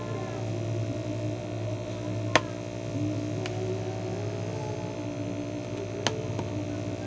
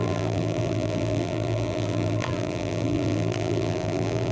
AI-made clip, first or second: second